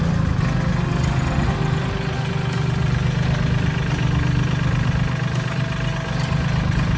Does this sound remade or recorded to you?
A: recorded